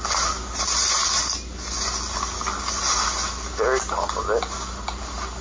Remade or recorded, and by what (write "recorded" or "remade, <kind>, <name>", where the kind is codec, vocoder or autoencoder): recorded